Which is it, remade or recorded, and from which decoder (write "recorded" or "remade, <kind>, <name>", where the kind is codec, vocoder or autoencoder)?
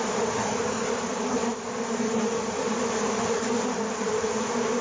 recorded